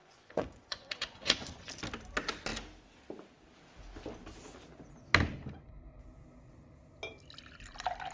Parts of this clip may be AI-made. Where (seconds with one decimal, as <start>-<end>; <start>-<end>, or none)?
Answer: 0.0-1.7